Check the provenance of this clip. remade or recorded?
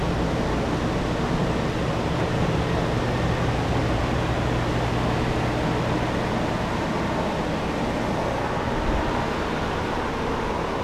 recorded